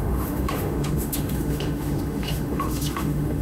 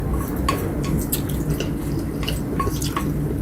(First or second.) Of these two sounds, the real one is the second